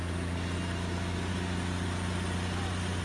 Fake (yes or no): no